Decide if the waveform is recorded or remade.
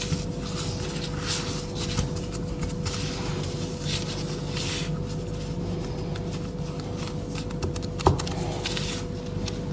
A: recorded